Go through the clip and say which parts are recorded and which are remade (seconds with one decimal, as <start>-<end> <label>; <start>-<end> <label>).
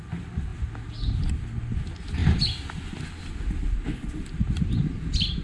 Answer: 0.0-5.4 recorded